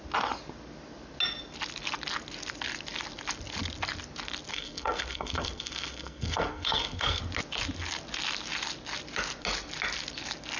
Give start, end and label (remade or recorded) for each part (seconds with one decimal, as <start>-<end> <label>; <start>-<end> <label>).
0.0-4.5 recorded; 4.5-7.2 remade; 7.2-10.6 recorded